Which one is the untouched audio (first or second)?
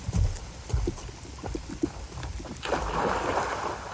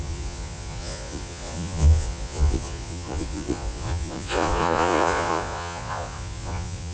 first